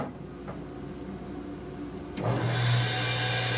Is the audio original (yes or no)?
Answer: yes